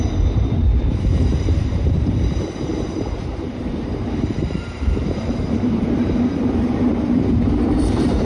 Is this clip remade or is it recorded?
remade